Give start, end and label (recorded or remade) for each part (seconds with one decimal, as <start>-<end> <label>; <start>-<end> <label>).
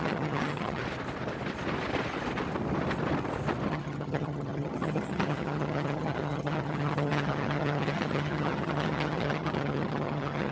0.0-0.8 remade; 0.8-3.7 recorded; 3.7-10.5 remade